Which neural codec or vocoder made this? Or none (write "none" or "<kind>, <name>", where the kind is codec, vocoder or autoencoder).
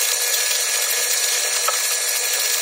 vocoder, BigVGAN v2